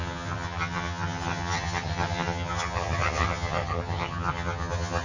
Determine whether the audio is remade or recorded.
remade